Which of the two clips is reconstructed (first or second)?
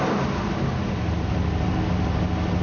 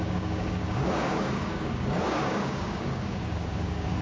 second